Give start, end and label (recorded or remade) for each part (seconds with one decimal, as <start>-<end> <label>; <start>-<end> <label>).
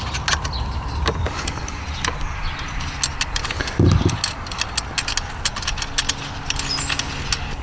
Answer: 0.0-1.2 recorded; 1.2-1.8 remade; 1.8-7.6 recorded